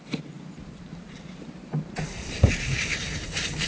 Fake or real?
fake